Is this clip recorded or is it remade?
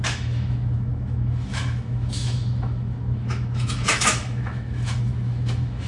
remade